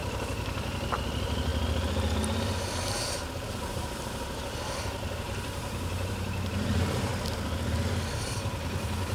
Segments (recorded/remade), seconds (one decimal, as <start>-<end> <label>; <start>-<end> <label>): 0.0-0.9 recorded; 0.9-1.5 remade; 1.5-3.5 recorded; 3.5-7.1 remade; 7.1-8.2 recorded; 8.2-9.1 remade